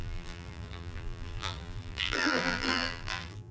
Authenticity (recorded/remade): remade